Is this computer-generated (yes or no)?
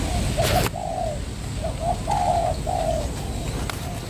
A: no